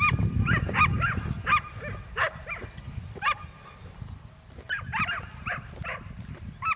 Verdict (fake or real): real